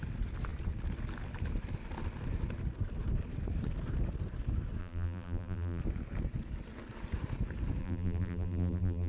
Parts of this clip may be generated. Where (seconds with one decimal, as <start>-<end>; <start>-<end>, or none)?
4.8-5.8; 7.8-9.1